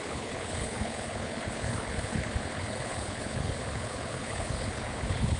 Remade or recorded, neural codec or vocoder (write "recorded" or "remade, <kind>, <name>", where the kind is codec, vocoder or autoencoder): remade, codec, HILCodec